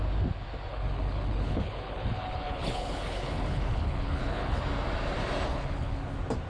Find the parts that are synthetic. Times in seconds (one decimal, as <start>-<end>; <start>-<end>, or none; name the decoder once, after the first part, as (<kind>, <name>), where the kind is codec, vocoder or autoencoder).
0.7-4.6 (codec, HILCodec); 5.5-6.1